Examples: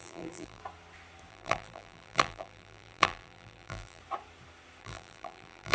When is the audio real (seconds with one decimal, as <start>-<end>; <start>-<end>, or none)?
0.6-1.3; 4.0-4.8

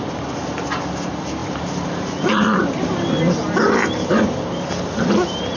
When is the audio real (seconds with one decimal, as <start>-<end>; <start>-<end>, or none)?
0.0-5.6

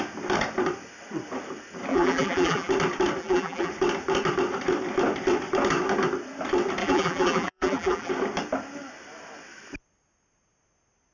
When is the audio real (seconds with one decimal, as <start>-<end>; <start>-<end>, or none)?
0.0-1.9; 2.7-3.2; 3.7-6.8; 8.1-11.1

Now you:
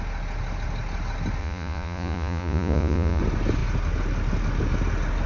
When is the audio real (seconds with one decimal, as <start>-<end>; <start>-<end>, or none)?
0.0-1.4; 3.2-5.3